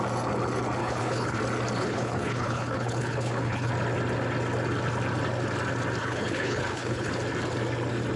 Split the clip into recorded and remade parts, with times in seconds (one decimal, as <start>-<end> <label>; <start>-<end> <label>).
0.0-0.8 recorded; 0.8-1.4 remade; 1.4-1.8 recorded; 1.8-3.7 remade; 3.7-6.0 recorded; 6.0-7.1 remade; 7.1-8.2 recorded